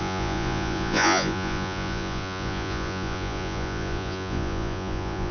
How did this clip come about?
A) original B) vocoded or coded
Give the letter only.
B